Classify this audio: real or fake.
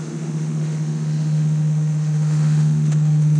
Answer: fake